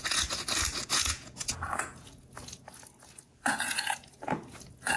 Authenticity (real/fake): fake